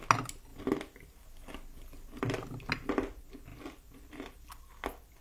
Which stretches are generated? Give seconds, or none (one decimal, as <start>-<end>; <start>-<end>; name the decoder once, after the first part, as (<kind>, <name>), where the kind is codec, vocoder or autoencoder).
3.5-4.5 (vocoder, BigVGAN v2)